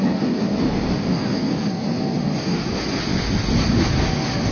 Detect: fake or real real